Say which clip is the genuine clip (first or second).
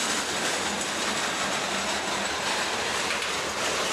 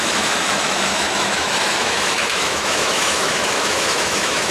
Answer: first